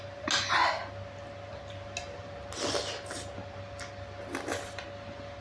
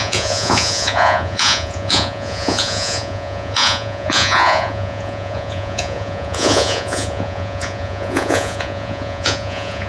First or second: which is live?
first